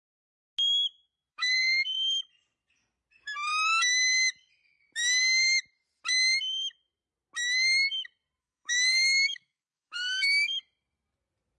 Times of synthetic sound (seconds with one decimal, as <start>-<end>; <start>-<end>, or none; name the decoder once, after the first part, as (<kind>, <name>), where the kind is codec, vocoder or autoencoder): 1.3-2.2 (codec, DAC); 8.4-10.6